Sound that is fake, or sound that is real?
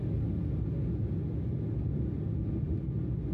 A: real